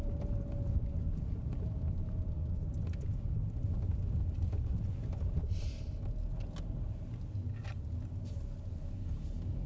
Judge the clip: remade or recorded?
recorded